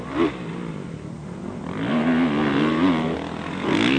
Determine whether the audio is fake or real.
real